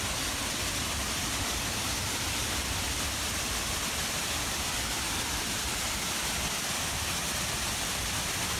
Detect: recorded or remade recorded